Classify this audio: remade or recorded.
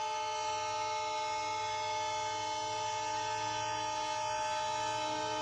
recorded